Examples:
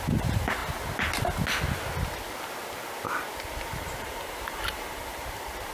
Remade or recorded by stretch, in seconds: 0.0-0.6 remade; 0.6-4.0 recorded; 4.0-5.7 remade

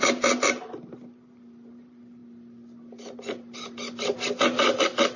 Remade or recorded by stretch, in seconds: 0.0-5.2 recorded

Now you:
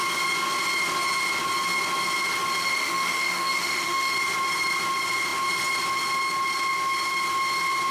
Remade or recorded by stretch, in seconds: 0.0-2.6 recorded; 2.6-4.1 remade; 4.1-7.9 recorded

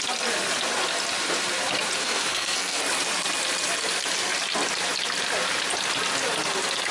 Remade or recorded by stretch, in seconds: 0.0-2.0 recorded; 2.0-2.8 remade; 2.8-6.9 recorded

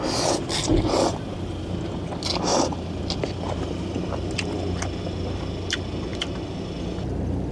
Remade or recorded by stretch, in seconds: 0.0-2.5 recorded; 2.5-3.0 remade; 3.0-7.5 recorded

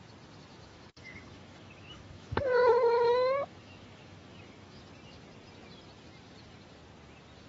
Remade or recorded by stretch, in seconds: 0.0-0.5 recorded; 0.5-4.8 remade; 4.8-7.5 recorded